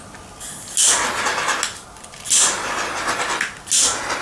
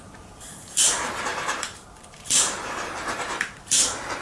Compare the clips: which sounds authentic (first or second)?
first